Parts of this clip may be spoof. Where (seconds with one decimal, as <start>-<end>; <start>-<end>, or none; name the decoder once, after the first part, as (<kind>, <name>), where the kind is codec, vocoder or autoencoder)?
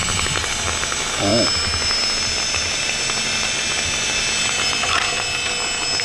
none